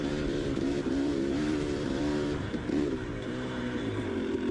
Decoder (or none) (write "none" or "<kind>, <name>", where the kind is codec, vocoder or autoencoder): vocoder, BigVGAN v2